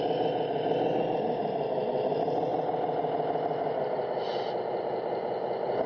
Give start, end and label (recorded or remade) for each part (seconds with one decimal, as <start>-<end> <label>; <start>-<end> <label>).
0.0-5.9 recorded